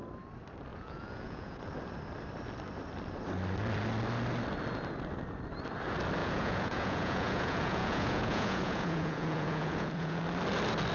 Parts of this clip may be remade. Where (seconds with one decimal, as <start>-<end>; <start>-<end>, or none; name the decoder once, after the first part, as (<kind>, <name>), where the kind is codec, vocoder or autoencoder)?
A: 0.7-1.6 (vocoder, Vocos); 6.2-10.2